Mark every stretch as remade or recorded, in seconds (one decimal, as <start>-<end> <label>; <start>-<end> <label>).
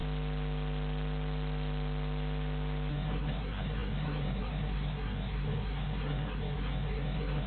0.0-2.9 recorded; 2.9-7.5 remade